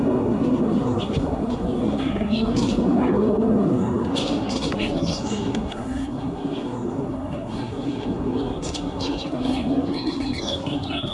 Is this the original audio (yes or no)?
no